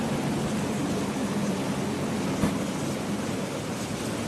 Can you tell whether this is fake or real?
real